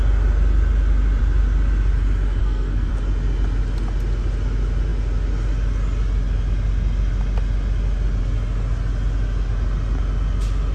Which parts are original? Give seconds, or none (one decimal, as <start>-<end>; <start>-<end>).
0.0-2.4; 2.9-10.7